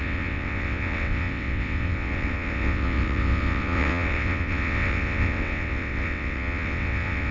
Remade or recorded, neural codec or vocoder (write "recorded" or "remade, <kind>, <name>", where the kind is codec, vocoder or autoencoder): remade, vocoder, WaveNeXt